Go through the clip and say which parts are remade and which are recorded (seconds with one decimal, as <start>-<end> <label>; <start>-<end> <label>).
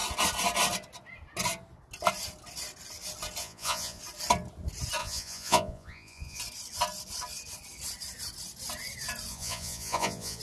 0.0-3.4 recorded; 3.4-4.0 remade; 4.0-5.0 recorded; 5.0-6.4 remade; 6.4-9.3 recorded; 9.3-10.4 remade